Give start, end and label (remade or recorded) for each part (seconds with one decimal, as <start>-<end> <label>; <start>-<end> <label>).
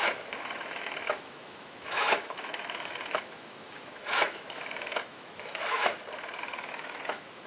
0.0-5.9 remade; 5.9-6.4 recorded; 6.4-7.5 remade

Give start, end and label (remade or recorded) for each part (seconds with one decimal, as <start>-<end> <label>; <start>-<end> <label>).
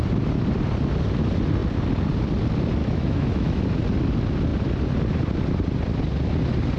0.0-2.8 recorded; 2.8-3.6 remade; 3.6-6.8 recorded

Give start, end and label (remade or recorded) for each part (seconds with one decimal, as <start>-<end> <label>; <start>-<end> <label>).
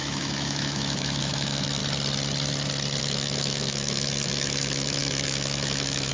0.0-1.8 remade; 1.8-3.0 recorded; 3.0-6.1 remade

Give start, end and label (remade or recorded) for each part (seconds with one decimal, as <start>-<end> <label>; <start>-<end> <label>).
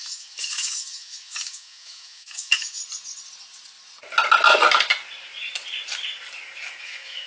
0.0-2.8 remade; 2.8-6.8 recorded; 6.8-7.3 remade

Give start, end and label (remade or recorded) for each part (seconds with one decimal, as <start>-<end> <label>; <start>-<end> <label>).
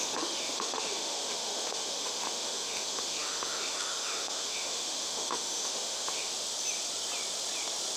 0.0-6.3 remade; 6.3-8.0 recorded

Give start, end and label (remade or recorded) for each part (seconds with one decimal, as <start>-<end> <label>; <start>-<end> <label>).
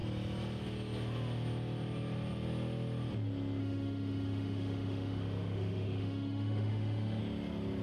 0.0-3.6 recorded; 3.6-7.2 remade; 7.2-7.8 recorded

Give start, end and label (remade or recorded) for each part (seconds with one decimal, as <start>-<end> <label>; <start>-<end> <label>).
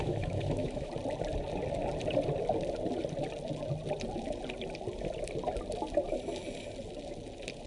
0.0-0.9 remade; 0.9-7.7 recorded